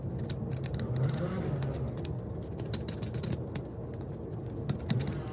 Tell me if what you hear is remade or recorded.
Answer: recorded